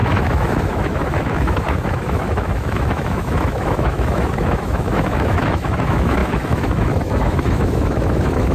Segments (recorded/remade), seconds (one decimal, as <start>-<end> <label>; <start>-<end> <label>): 0.0-8.5 remade